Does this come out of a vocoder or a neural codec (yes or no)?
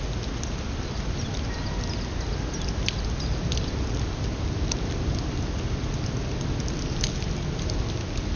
no